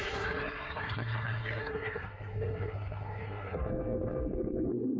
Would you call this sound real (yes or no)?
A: no